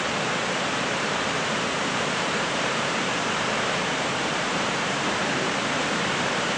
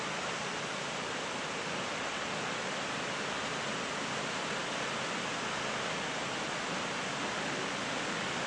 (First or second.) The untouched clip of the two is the second